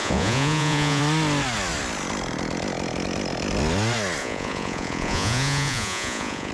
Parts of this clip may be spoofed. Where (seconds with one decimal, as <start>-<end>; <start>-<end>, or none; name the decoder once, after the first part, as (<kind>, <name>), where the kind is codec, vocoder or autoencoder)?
0.0-1.0 (vocoder, Vocos); 4.2-6.5